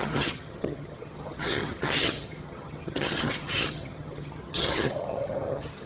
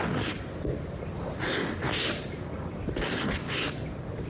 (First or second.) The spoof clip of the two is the first